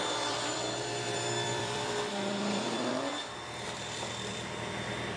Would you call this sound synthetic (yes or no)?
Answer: yes